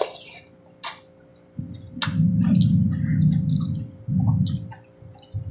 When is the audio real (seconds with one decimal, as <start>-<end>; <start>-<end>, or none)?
0.0-5.5